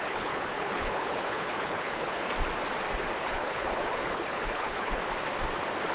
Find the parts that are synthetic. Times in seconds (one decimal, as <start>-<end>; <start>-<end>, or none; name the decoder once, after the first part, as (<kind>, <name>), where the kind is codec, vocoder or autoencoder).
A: 0.0-2.3 (codec, HILCodec); 3.2-5.0